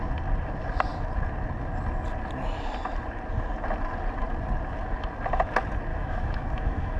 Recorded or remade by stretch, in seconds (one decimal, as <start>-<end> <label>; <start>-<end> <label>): 0.0-5.9 recorded; 5.9-7.0 remade